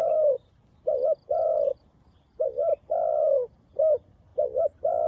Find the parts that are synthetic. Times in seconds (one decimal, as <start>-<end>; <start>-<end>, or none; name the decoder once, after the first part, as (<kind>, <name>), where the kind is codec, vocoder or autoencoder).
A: 4.3-5.1 (vocoder, BigVGAN v2)